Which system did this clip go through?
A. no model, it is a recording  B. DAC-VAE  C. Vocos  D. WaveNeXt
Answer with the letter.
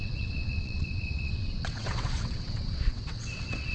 D